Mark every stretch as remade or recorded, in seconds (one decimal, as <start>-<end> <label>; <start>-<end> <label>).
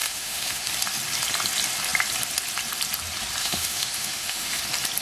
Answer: 0.0-0.7 remade; 0.7-3.4 recorded; 3.4-4.6 remade; 4.6-5.0 recorded